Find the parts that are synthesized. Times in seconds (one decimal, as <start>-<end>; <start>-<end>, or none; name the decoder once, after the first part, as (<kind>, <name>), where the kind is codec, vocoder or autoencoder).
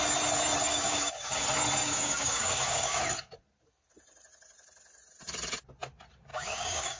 0.7-1.4 (codec, DAC); 1.8-3.0; 6.3-7.0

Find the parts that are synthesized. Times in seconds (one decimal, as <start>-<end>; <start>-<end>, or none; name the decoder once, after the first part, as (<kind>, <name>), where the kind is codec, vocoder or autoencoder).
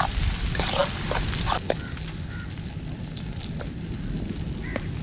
none